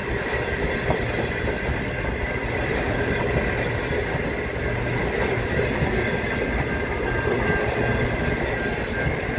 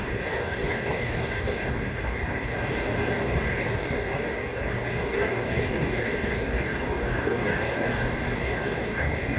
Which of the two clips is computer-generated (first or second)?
second